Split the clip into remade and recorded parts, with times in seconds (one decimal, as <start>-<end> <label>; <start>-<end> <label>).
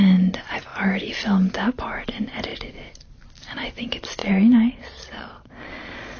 0.0-4.2 recorded; 4.2-6.2 remade